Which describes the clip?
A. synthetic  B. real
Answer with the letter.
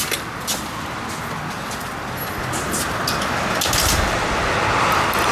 B